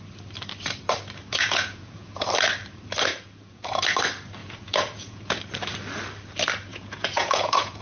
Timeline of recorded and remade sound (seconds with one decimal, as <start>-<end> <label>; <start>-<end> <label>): 0.0-1.3 recorded; 1.3-2.3 remade; 2.3-3.1 recorded; 3.1-3.7 remade; 3.7-4.4 recorded; 4.4-5.4 remade; 5.4-6.7 recorded; 6.7-7.8 remade